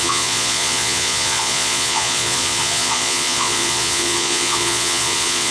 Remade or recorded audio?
remade